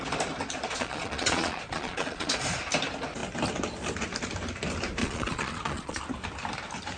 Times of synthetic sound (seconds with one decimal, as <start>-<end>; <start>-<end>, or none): 0.7-2.4; 5.0-6.0